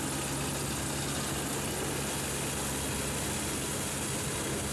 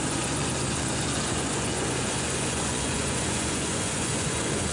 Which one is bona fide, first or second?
first